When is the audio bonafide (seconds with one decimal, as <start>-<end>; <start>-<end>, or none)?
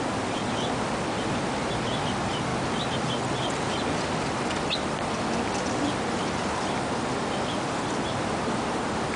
0.0-9.2